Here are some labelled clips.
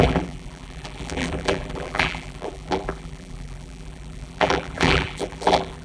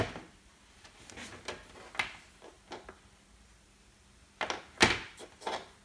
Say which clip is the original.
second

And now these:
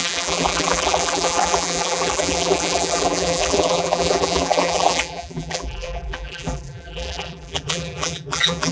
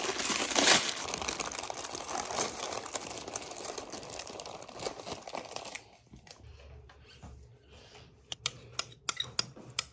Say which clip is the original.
second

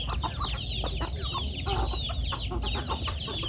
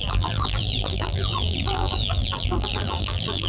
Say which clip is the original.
first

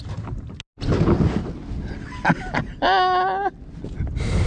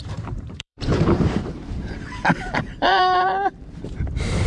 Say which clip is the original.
first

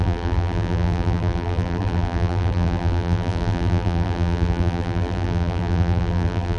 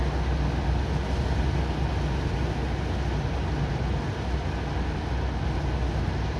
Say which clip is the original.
second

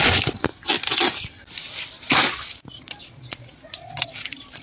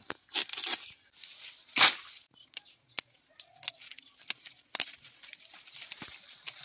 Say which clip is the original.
second